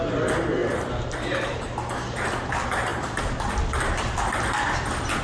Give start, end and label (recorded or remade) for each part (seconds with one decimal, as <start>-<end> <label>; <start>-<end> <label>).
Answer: 0.0-0.6 recorded; 0.6-1.8 remade; 1.8-2.9 recorded; 2.9-3.5 remade; 3.5-5.2 recorded